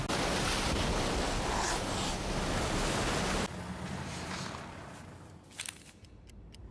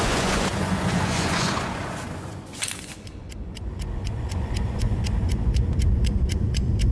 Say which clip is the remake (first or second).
second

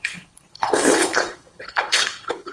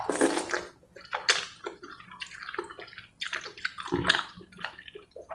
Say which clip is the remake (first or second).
first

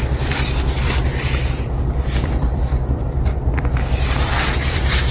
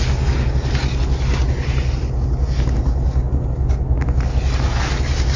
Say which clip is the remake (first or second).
first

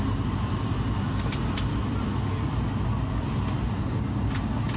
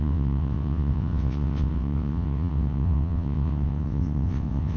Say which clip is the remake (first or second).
second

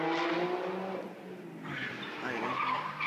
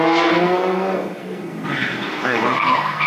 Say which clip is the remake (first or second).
second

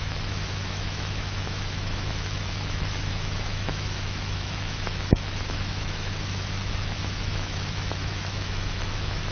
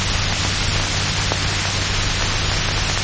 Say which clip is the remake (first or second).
first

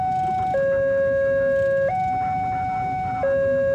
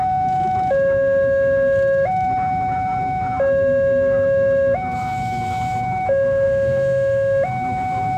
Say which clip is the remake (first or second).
second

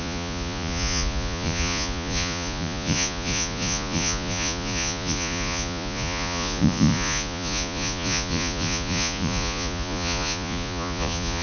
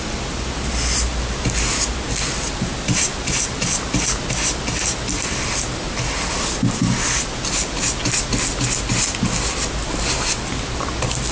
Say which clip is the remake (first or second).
first